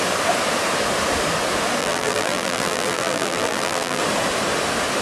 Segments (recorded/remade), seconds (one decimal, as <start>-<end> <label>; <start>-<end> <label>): 0.0-1.8 recorded; 1.8-4.0 remade; 4.0-5.0 recorded